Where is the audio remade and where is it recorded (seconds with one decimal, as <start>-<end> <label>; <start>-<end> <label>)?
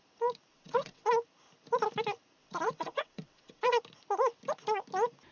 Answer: 0.0-0.5 recorded; 0.5-1.1 remade; 1.1-2.4 recorded; 2.4-3.8 remade; 3.8-5.3 recorded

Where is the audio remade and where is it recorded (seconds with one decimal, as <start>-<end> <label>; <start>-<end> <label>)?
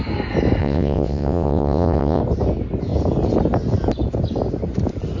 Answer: 0.0-0.6 recorded; 0.6-2.2 remade; 2.2-5.2 recorded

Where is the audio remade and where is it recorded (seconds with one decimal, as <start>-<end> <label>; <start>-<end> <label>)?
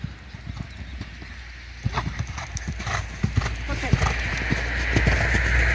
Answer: 0.0-5.7 recorded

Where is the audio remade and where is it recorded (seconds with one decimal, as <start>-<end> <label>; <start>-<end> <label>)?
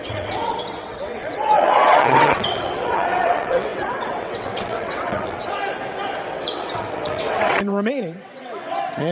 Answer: 0.0-5.6 remade; 5.6-6.3 recorded; 6.3-9.1 remade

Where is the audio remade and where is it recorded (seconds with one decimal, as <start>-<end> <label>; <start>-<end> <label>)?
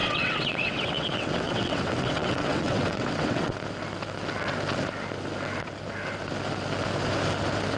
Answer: 0.0-3.5 remade; 3.5-7.8 recorded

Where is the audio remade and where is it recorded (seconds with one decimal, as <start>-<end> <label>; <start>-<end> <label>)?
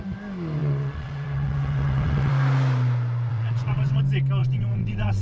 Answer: 0.0-0.6 recorded; 0.6-2.3 remade; 2.3-3.3 recorded; 3.3-4.0 remade; 4.0-4.4 recorded; 4.4-5.2 remade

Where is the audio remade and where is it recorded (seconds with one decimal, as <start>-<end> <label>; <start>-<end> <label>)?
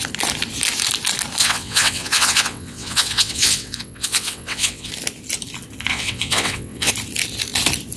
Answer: 0.0-1.4 recorded; 1.4-4.9 remade; 4.9-5.9 recorded; 5.9-6.9 remade; 6.9-8.0 recorded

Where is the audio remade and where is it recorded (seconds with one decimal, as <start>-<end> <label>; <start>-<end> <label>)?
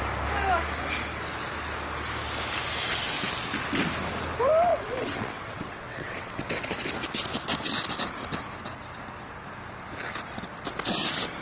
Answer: 0.0-4.7 recorded; 4.7-6.7 remade; 6.7-11.4 recorded